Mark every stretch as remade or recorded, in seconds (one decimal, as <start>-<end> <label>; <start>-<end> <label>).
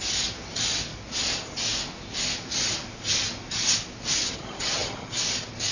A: 0.0-4.2 recorded; 4.2-5.1 remade; 5.1-5.7 recorded